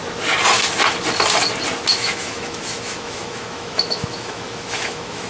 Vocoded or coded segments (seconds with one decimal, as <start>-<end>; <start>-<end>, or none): 1.9-5.3